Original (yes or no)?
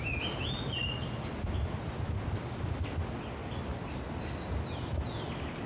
yes